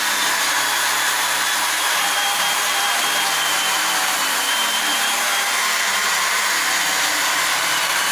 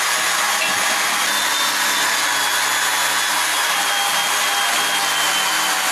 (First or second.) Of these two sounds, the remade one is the first